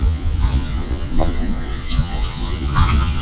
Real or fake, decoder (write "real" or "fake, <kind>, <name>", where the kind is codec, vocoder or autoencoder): fake, vocoder, Vocos